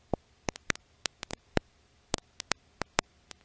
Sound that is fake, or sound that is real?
fake